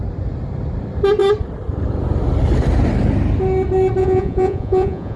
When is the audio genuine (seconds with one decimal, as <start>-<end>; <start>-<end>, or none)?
0.0-4.0